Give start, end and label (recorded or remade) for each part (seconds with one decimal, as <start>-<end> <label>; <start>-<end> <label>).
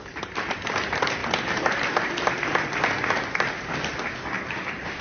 0.0-5.0 recorded